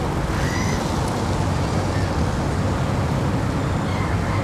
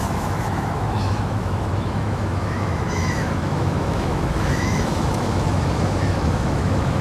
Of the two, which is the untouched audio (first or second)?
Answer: first